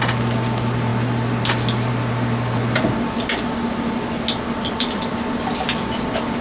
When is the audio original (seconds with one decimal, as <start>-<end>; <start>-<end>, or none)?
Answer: 0.0-6.4